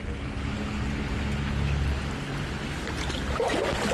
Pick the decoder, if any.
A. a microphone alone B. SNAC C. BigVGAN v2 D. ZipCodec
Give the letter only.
A